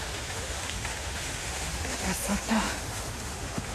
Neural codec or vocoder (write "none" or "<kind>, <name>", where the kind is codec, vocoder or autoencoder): autoencoder, DAC-VAE